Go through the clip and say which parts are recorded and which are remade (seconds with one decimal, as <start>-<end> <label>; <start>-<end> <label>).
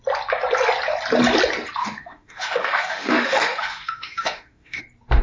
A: 0.0-1.8 recorded; 1.8-4.8 remade; 4.8-5.2 recorded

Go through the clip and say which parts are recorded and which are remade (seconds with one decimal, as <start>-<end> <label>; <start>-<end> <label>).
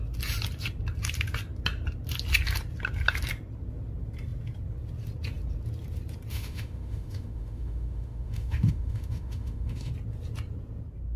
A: 0.0-6.3 recorded; 6.3-9.9 remade; 9.9-11.2 recorded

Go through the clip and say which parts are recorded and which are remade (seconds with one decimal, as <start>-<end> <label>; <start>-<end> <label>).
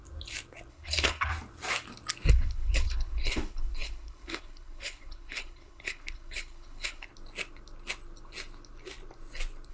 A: 0.0-0.7 recorded; 0.7-1.3 remade; 1.3-2.3 recorded; 2.3-7.1 remade; 7.1-9.7 recorded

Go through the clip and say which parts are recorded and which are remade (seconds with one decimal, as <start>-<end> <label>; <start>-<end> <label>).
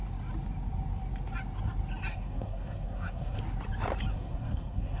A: 0.0-2.1 recorded; 2.1-3.4 remade; 3.4-4.1 recorded; 4.1-5.0 remade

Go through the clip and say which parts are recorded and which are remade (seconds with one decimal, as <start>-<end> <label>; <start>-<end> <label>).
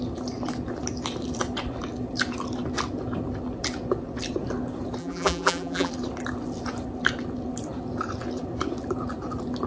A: 0.0-5.0 recorded; 5.0-5.9 remade; 5.9-9.7 recorded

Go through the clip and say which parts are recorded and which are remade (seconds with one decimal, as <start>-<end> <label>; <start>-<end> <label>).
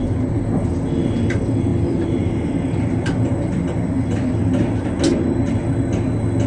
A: 0.0-1.7 recorded; 1.7-4.4 remade; 4.4-5.1 recorded; 5.1-5.6 remade; 5.6-6.5 recorded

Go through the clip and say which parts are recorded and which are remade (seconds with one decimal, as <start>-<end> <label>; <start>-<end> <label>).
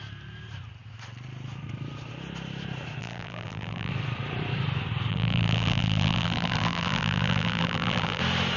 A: 0.0-3.0 recorded; 3.0-3.9 remade; 3.9-5.1 recorded; 5.1-8.2 remade; 8.2-8.6 recorded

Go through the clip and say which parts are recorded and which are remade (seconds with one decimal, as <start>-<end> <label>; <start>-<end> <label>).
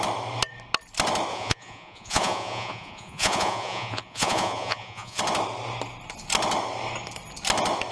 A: 0.0-1.3 recorded; 1.3-5.2 remade; 5.2-7.9 recorded